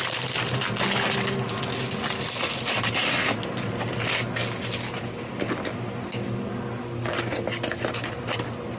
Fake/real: real